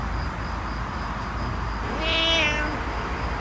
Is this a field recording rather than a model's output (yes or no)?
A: yes